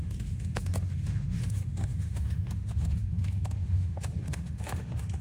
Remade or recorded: remade